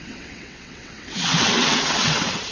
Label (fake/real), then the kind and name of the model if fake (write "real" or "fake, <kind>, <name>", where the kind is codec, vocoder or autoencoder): fake, vocoder, WaveNeXt